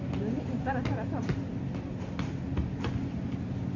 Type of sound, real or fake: real